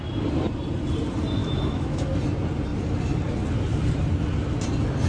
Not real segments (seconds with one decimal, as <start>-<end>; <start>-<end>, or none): 1.4-2.1

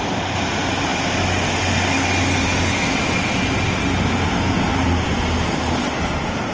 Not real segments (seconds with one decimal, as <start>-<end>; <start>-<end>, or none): none

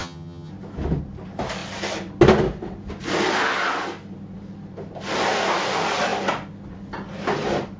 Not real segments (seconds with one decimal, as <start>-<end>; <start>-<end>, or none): 0.0-0.5

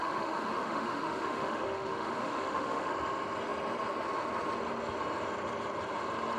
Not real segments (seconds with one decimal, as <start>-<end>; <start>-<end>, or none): 0.0-2.9

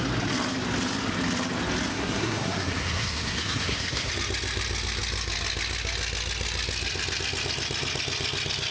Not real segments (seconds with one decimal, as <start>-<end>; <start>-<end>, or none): 1.9-4.1

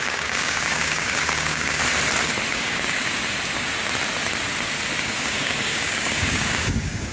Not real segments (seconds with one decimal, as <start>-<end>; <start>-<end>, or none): 0.0-1.8; 2.5-3.2; 5.0-7.1